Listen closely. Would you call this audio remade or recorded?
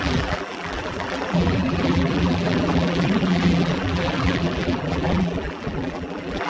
remade